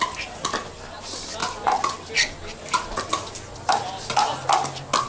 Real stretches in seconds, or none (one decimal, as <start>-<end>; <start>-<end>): 0.0-5.1